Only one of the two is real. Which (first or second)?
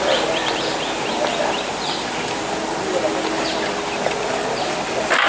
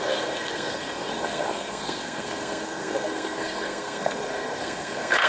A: first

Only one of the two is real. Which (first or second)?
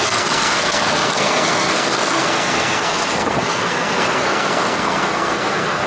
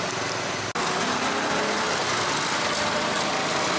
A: second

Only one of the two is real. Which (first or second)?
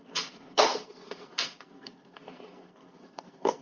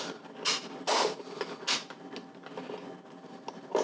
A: second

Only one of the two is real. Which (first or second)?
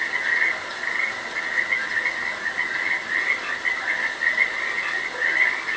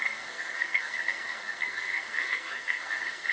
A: first